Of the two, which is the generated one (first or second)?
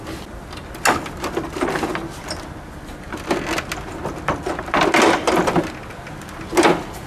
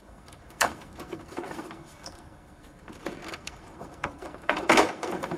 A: second